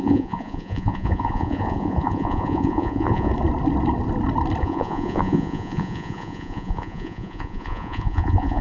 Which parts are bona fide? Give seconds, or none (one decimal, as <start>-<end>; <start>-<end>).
3.3-4.6